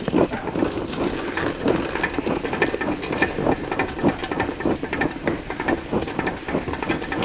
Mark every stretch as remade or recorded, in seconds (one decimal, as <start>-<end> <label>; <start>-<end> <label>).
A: 0.0-7.2 recorded